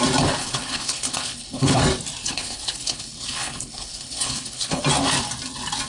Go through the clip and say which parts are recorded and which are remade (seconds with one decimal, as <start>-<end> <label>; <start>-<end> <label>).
0.0-0.4 recorded; 0.4-1.8 remade; 1.8-2.2 recorded; 2.2-4.8 remade; 4.8-5.9 recorded